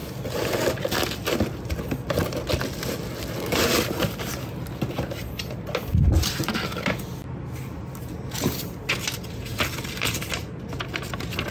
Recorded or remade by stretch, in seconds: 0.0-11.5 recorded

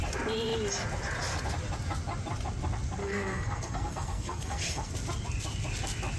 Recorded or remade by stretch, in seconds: 0.0-3.0 recorded; 3.0-4.9 remade; 4.9-6.2 recorded

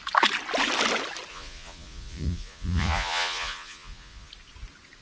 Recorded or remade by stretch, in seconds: 0.0-1.3 recorded; 1.3-4.3 remade; 4.3-5.0 recorded

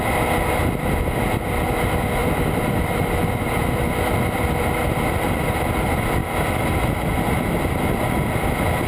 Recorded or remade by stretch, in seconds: 0.0-2.2 recorded; 2.2-5.6 remade; 5.6-6.2 recorded; 6.2-6.8 remade; 6.8-8.9 recorded

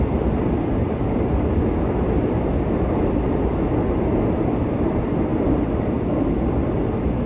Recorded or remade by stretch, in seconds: 0.0-7.3 recorded